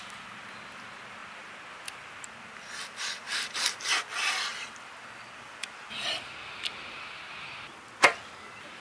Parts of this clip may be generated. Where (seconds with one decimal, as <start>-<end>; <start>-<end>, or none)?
none